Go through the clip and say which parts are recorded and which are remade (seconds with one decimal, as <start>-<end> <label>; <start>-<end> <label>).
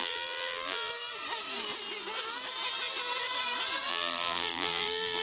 0.0-0.9 remade; 0.9-3.9 recorded; 3.9-5.2 remade